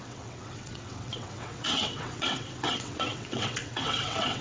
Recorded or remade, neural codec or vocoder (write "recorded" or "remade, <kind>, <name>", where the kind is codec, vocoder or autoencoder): remade, vocoder, WaveNeXt